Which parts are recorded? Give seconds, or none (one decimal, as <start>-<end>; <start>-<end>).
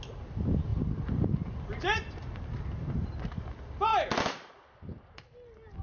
0.0-0.7; 2.1-5.8